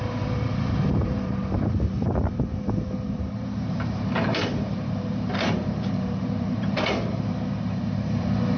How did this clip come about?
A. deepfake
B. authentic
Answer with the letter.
A